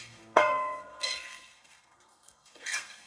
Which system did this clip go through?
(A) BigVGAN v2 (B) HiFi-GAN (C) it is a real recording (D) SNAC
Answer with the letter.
D